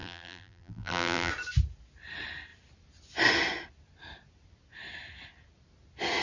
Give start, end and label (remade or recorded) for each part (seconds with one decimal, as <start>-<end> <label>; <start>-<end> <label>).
0.0-1.3 remade; 1.3-6.2 recorded